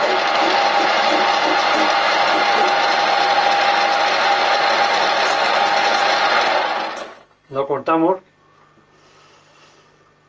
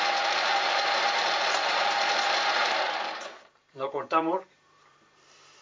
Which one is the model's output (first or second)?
second